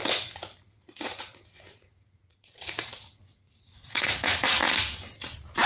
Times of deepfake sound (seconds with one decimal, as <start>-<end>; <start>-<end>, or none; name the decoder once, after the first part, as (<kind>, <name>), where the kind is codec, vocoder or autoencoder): 0.8-4.6 (vocoder, Vocos)